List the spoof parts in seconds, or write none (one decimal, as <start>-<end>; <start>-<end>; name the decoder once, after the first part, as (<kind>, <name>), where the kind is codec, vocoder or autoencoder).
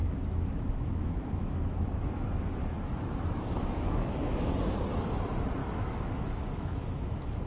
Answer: 0.0-4.5 (autoencoder, DAC-VAE); 5.6-7.5